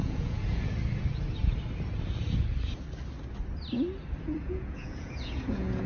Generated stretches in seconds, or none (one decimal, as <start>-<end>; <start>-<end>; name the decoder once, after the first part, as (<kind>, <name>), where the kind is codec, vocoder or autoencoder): 0.0-0.7 (vocoder, Vocos); 4.2-5.9